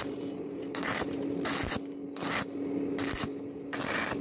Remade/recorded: recorded